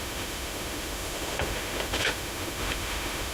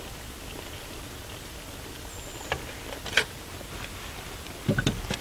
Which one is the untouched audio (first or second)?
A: second